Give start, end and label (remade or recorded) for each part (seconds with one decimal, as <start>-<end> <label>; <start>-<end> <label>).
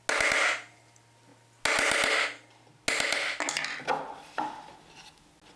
0.0-5.6 recorded